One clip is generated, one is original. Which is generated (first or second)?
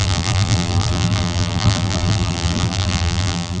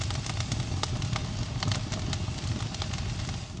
first